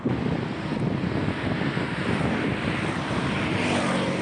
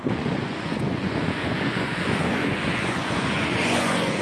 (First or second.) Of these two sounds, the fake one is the second